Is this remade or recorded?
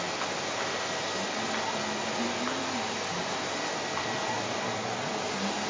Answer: recorded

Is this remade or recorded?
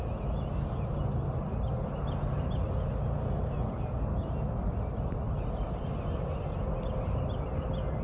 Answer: recorded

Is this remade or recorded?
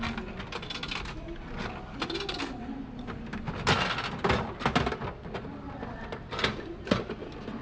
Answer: recorded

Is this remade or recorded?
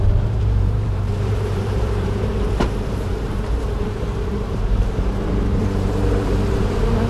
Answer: remade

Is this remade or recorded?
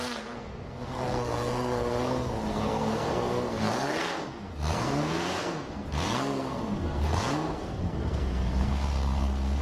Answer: remade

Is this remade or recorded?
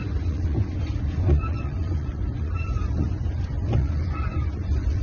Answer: remade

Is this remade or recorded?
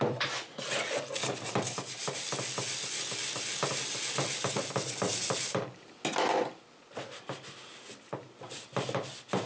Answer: recorded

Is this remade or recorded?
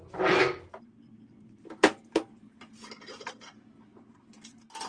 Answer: recorded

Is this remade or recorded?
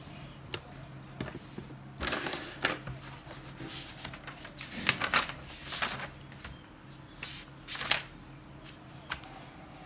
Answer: recorded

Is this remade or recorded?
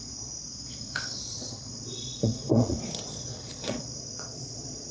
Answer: remade